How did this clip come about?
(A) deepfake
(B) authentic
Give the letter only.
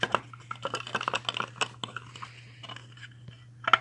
B